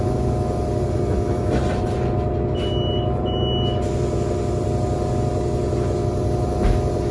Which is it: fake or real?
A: real